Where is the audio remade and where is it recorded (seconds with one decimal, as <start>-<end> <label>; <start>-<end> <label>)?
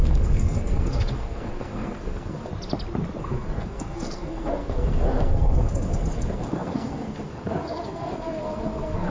0.0-2.5 remade; 2.5-3.2 recorded; 3.2-9.1 remade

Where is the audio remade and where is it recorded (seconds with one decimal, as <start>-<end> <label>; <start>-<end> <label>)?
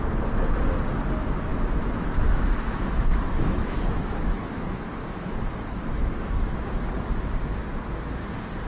0.0-1.5 recorded; 1.5-6.7 remade; 6.7-8.7 recorded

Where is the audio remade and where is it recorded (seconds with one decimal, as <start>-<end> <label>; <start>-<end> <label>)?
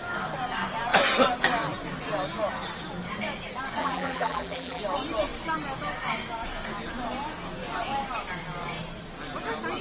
0.0-3.8 recorded; 3.8-4.8 remade; 4.8-9.8 recorded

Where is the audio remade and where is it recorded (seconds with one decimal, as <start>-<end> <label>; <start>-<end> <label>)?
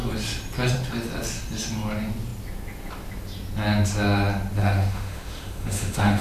0.0-4.6 recorded; 4.6-6.2 remade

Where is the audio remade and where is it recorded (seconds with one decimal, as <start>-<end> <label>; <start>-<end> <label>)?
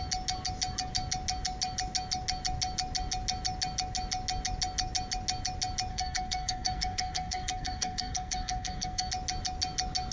0.0-5.9 recorded; 5.9-9.1 remade; 9.1-10.1 recorded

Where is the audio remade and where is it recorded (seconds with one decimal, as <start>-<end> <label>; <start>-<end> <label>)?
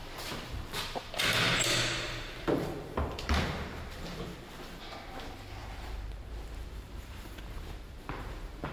0.0-4.6 remade; 4.6-5.6 recorded; 5.6-8.7 remade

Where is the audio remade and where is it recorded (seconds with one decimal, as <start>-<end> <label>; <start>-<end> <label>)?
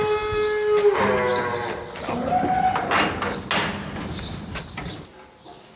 0.0-5.8 recorded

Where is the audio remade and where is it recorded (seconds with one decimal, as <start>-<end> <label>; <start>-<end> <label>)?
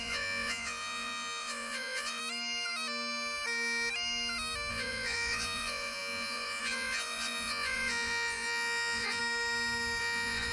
0.0-2.2 remade; 2.2-4.7 recorded; 4.7-9.2 remade; 9.2-10.0 recorded; 10.0-10.5 remade